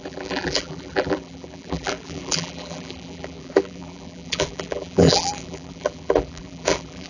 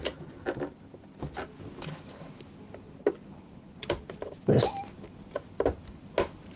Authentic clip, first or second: second